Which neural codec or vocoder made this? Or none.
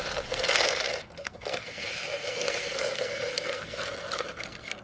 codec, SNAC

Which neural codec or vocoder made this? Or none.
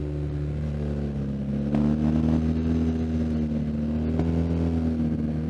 none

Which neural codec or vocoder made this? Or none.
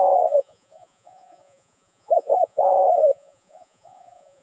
vocoder, Vocos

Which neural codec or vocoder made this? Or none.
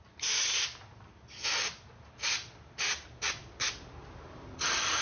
vocoder, BigVGAN v2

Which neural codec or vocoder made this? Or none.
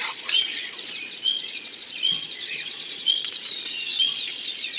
vocoder, Vocos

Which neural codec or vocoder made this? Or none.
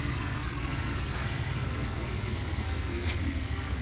codec, SNAC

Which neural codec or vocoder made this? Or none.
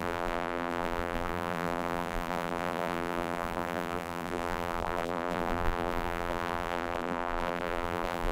vocoder, BigVGAN v2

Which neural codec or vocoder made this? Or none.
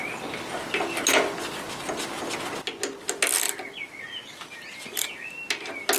none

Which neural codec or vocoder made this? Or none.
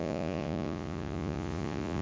vocoder, Vocos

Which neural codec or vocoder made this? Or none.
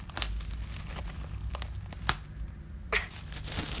none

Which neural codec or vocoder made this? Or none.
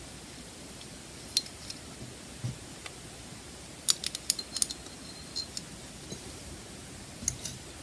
none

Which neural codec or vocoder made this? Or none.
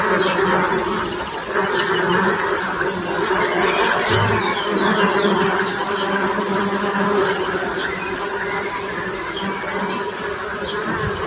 none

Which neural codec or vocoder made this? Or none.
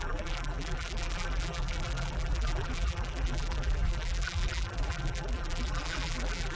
vocoder, BigVGAN v2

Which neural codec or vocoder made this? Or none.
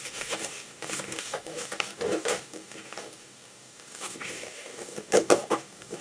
codec, DAC